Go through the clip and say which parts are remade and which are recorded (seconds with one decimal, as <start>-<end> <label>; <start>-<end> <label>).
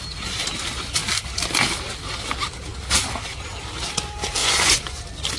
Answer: 0.0-4.4 recorded; 4.4-5.0 remade; 5.0-5.4 recorded